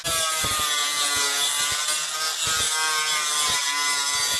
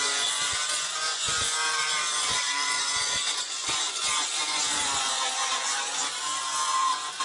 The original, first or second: first